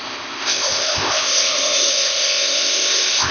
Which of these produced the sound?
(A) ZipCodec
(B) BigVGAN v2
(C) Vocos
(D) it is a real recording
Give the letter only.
A